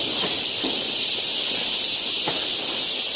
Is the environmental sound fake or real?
real